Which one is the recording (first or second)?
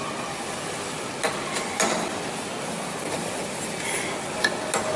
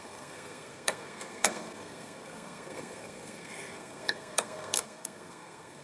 first